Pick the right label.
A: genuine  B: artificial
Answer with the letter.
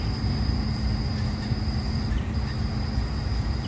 B